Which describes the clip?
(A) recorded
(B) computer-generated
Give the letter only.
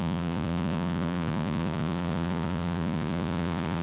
B